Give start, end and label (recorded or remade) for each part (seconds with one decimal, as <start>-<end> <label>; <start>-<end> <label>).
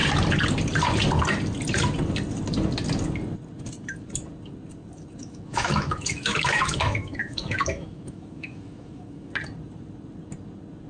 0.0-5.2 recorded; 5.2-9.3 remade; 9.3-10.9 recorded